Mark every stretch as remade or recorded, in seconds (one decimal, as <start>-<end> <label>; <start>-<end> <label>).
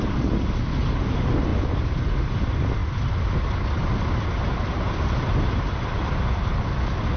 0.0-7.2 recorded